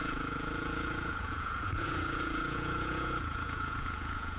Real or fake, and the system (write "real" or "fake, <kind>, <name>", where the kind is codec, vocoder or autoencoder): fake, vocoder, Vocos